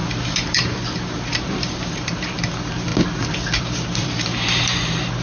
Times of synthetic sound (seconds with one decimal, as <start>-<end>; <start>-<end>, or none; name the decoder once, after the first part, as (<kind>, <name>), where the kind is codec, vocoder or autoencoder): 0.0-2.4 (vocoder, BigVGAN v2); 4.0-4.8